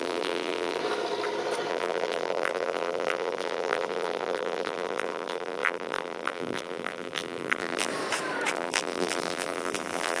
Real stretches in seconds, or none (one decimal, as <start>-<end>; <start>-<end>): 0.8-1.7; 7.9-8.5